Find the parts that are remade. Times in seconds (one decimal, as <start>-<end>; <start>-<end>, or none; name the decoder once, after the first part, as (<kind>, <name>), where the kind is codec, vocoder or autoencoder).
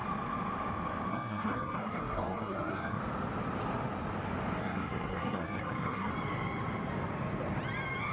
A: 1.1-3.0 (codec, SNAC); 4.6-6.1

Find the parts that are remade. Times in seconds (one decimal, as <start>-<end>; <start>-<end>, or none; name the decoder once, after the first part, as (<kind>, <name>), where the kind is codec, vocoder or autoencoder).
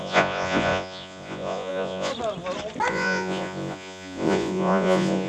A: 0.0-2.1 (vocoder, Vocos); 2.9-5.3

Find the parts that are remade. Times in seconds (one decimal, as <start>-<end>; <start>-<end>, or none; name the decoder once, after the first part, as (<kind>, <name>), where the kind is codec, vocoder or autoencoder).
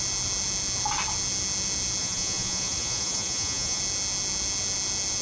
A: 2.0-3.8 (vocoder, Vocos)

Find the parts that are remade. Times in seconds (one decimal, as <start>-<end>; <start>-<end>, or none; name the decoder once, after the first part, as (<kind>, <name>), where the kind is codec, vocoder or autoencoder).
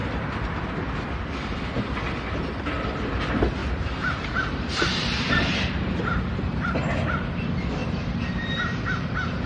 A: 3.6-6.7 (vocoder, BigVGAN v2); 7.8-8.8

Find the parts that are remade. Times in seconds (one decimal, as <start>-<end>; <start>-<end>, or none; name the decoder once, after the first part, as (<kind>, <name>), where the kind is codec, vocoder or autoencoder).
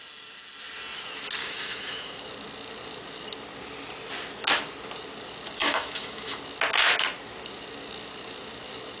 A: 1.4-2.2 (autoencoder, DAC-VAE); 5.6-6.4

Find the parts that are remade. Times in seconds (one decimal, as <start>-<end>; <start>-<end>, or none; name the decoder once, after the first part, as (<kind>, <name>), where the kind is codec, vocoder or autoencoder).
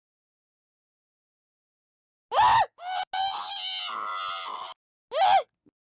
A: none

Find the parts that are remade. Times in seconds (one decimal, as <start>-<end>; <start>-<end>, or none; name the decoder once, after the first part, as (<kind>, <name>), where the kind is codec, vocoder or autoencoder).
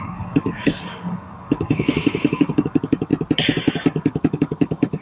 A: 0.0-3.1 (codec, DAC); 3.7-5.0